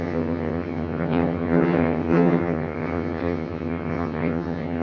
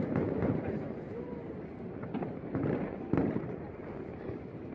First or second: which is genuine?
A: second